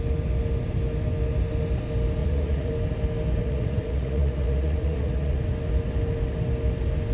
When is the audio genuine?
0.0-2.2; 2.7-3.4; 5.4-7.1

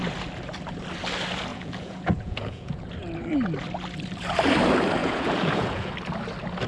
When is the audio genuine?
0.0-1.5; 2.9-5.0; 5.9-6.7

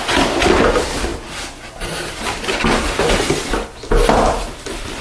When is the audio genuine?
0.0-5.0

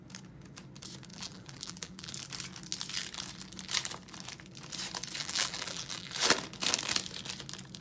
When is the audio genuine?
0.0-1.1; 2.1-5.2; 6.1-7.8

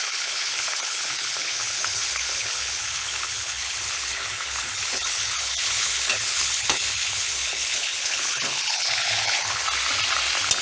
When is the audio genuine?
9.6-10.6